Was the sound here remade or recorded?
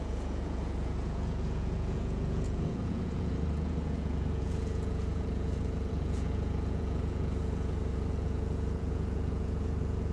remade